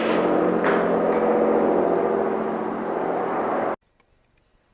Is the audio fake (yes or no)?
no